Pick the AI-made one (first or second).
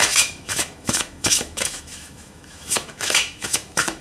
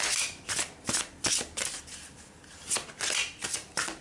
first